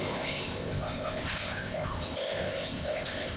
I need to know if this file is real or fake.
fake